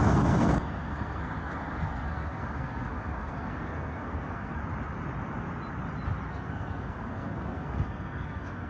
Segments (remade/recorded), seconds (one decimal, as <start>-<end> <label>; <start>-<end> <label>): 0.0-4.6 remade; 4.6-6.3 recorded; 6.3-8.7 remade